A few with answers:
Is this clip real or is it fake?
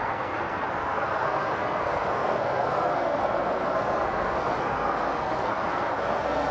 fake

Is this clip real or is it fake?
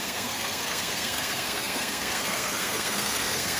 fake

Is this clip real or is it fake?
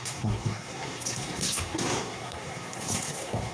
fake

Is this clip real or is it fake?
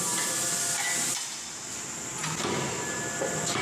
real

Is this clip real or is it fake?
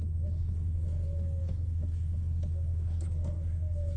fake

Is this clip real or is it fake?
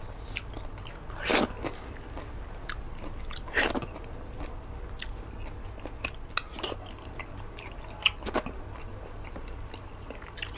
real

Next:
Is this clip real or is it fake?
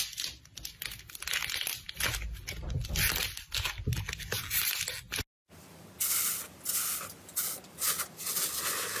real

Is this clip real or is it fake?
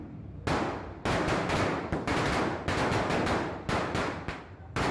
real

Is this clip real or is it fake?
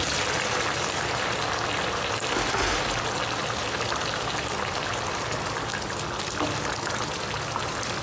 real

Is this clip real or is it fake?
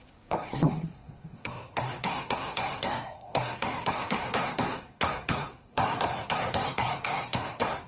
fake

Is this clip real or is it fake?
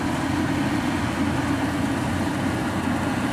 real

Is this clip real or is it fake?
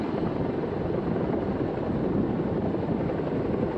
real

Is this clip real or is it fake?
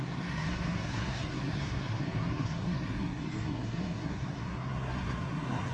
fake